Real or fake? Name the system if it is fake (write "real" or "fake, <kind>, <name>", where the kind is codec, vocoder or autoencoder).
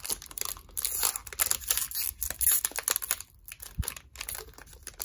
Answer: real